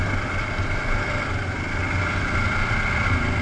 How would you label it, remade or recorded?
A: recorded